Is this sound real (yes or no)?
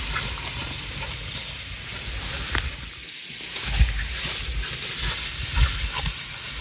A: yes